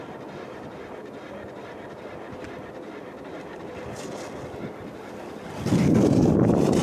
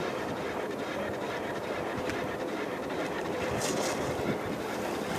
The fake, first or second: second